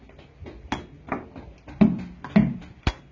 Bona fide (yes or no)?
yes